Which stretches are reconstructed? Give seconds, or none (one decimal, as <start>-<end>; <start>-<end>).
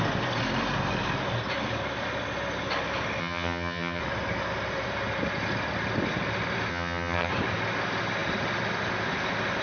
3.2-4.0; 6.7-7.3